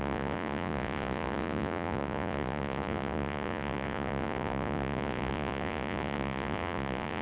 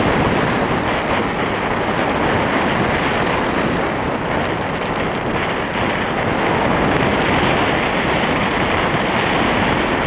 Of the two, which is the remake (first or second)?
first